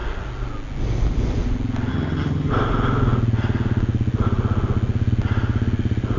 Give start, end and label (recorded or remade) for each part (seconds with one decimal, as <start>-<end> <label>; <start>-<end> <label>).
0.0-1.9 recorded; 1.9-2.5 remade; 2.5-6.2 recorded